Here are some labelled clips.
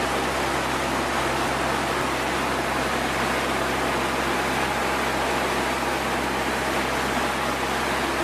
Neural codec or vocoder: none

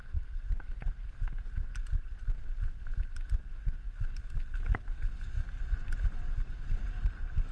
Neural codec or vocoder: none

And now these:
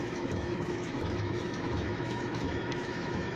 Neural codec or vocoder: autoencoder, DAC-VAE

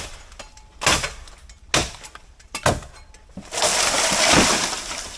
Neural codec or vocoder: none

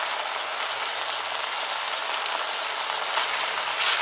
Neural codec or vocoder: none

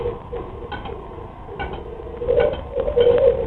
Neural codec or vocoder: none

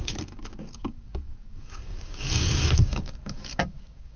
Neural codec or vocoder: codec, DAC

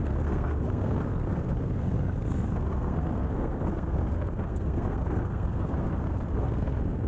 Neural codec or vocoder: codec, SNAC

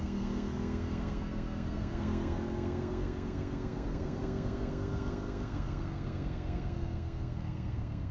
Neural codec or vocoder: codec, SNAC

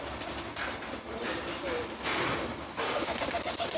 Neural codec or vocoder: none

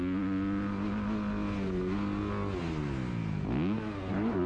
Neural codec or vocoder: none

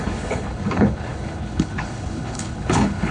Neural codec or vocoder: codec, HILCodec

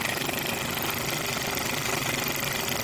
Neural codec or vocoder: none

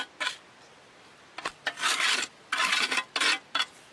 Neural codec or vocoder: none